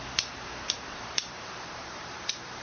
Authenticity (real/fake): fake